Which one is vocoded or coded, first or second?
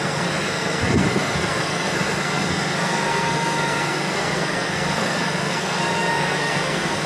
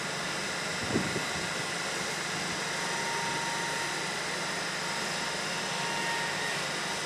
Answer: first